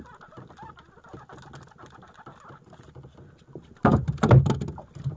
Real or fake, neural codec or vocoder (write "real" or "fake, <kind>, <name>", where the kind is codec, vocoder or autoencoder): real